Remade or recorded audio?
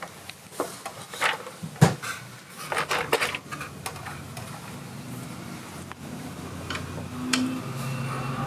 recorded